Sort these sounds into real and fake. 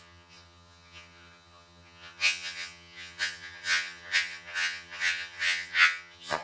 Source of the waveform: fake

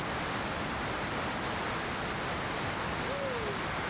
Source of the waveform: real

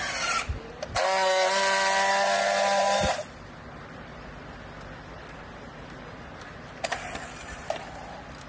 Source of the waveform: real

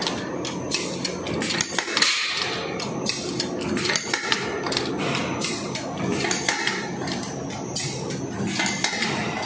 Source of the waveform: real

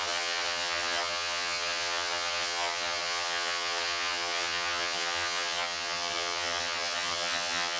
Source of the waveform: fake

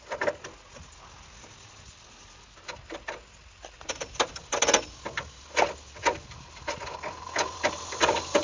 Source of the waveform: real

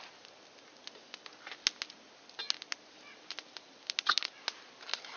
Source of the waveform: real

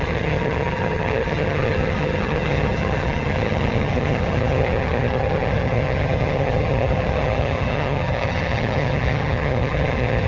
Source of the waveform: fake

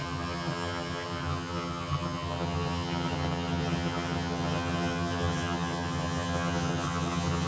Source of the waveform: fake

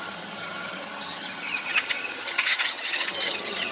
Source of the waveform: fake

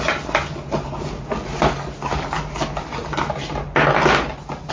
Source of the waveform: real